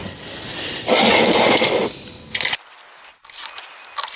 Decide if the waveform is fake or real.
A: real